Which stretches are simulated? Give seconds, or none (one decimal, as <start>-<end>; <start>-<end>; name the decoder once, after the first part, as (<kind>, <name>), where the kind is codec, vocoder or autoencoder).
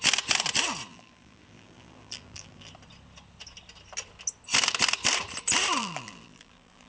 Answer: 0.9-2.7 (vocoder, BigVGAN v2); 5.8-6.9